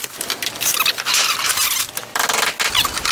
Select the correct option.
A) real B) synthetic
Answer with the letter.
A